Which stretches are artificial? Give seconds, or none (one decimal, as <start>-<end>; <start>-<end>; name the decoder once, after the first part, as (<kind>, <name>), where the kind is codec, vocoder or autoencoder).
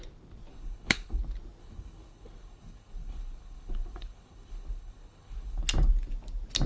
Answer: 0.5-1.2 (codec, HILCodec); 1.6-5.6